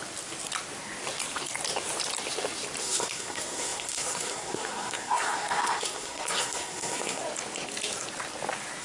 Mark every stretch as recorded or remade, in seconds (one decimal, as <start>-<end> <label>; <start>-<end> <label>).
0.0-2.8 recorded; 2.8-7.2 remade; 7.2-8.8 recorded